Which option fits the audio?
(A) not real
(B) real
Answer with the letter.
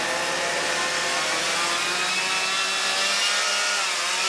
B